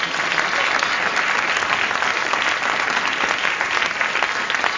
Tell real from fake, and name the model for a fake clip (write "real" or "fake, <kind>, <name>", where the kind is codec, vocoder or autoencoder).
real